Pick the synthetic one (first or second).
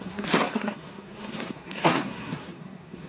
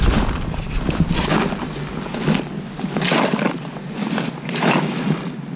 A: first